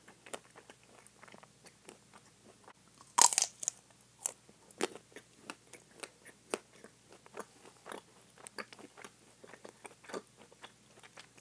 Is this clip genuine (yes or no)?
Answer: yes